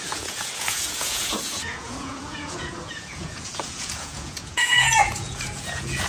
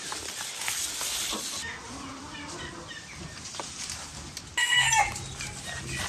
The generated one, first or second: first